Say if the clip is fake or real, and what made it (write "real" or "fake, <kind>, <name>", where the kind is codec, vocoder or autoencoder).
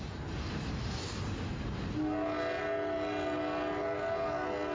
real